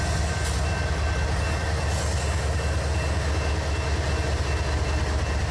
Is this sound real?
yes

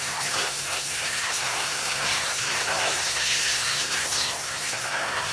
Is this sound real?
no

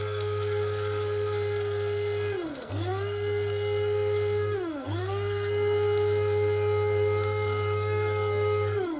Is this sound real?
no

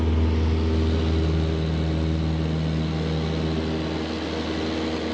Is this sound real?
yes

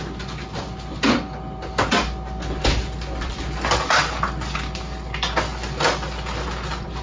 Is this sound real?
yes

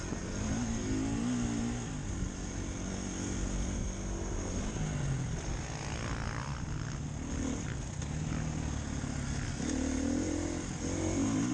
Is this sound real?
yes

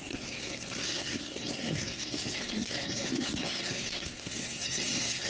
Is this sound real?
no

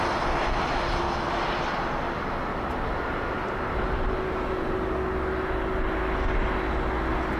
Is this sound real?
yes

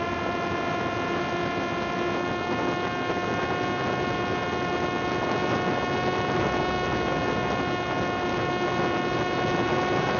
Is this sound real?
yes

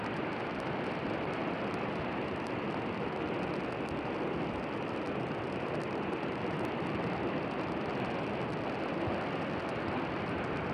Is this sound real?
yes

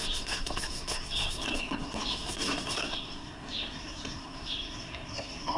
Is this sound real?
no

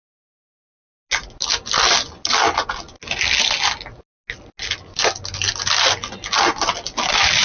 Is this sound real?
yes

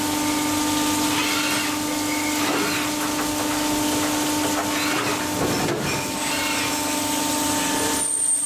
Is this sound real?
yes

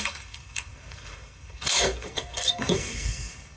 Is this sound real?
no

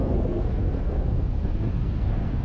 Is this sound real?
no